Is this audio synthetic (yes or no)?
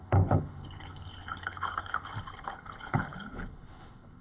yes